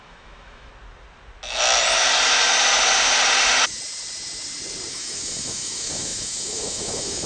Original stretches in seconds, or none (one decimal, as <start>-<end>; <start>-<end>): 0.7-4.9